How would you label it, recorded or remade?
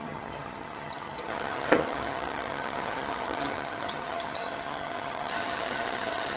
remade